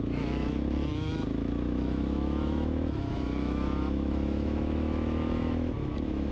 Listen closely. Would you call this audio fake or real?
fake